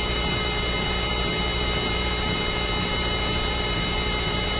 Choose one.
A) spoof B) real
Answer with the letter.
A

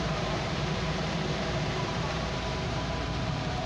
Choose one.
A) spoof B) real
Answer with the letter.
A